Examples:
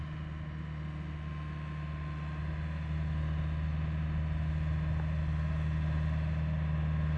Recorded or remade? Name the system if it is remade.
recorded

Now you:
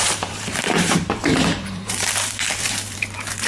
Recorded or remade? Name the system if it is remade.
remade, vocoder, BigVGAN v2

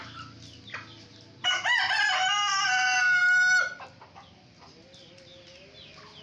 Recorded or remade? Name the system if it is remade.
recorded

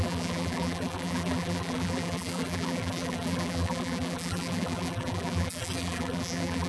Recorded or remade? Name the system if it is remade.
remade, vocoder, BigVGAN v2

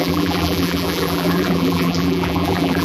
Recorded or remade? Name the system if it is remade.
remade, vocoder, BigVGAN v2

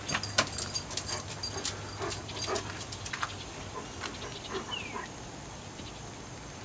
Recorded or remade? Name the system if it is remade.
recorded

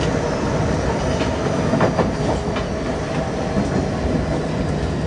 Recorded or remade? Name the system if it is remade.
recorded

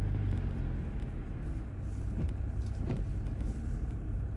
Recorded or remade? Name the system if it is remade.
recorded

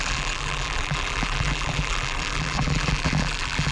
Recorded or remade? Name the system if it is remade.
remade, vocoder, BigVGAN v2